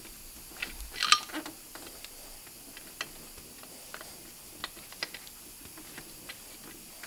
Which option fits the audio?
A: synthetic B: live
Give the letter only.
B